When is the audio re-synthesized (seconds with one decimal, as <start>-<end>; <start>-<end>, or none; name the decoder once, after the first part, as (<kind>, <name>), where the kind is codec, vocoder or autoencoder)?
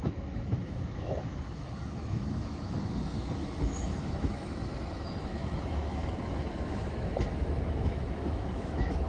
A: 0.0-9.1 (autoencoder, DAC-VAE)